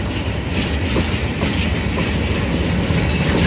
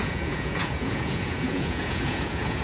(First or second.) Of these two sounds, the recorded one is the first